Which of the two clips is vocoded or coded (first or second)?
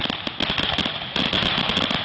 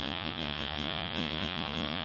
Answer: second